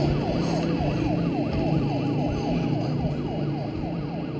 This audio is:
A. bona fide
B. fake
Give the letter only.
A